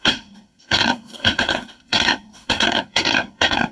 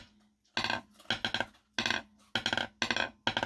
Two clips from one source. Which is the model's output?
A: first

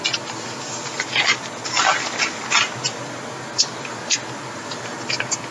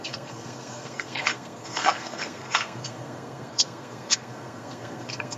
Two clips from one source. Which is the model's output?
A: second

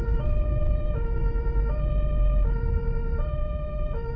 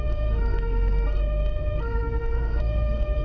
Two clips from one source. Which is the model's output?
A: second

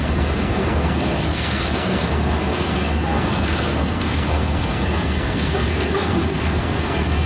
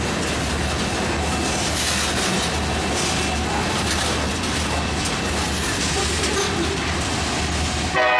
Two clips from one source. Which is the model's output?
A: first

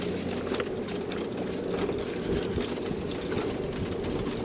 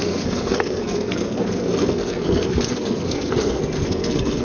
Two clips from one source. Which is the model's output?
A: second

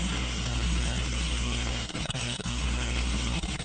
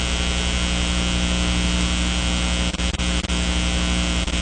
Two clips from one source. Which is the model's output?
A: first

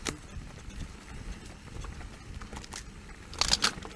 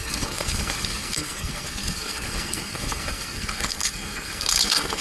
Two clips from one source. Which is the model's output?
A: second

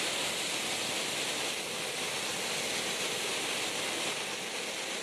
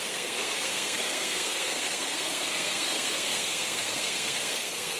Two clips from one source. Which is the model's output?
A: second